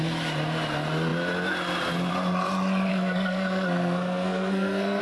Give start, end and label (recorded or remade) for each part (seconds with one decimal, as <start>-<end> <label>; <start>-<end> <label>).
0.0-2.9 recorded; 2.9-5.0 remade